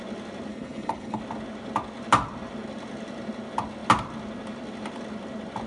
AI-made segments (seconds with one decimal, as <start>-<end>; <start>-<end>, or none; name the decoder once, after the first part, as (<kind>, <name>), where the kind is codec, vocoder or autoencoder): 0.5-1.2 (codec, HILCodec)